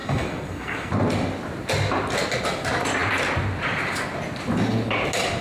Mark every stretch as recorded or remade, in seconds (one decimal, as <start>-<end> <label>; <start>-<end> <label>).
0.0-0.9 remade; 0.9-5.4 recorded